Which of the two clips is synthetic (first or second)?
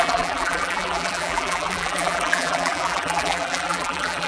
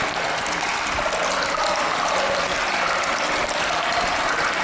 first